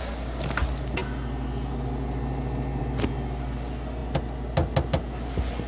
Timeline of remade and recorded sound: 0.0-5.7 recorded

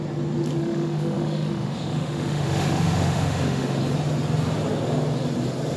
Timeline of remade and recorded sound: 0.0-0.6 recorded; 0.6-3.8 remade; 3.8-5.8 recorded

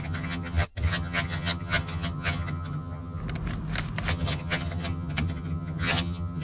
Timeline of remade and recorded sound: 0.0-3.2 remade; 3.2-4.1 recorded; 4.1-6.4 remade

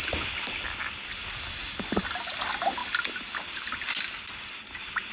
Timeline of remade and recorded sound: 0.0-5.1 recorded

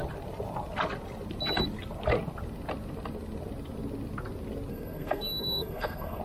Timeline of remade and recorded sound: 0.0-4.7 recorded; 4.7-6.2 remade

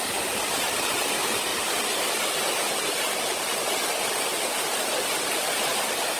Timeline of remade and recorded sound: 0.0-6.2 recorded

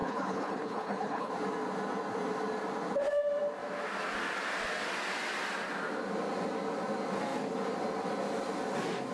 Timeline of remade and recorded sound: 0.0-1.3 remade; 1.3-9.1 recorded

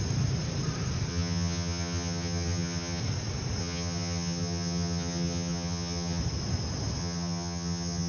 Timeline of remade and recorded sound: 0.0-1.1 recorded; 1.1-3.0 remade; 3.0-3.6 recorded; 3.6-6.2 remade; 6.2-7.0 recorded; 7.0-8.1 remade